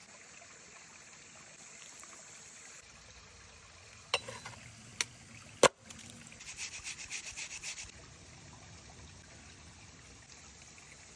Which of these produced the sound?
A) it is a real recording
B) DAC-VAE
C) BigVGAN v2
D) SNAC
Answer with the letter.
A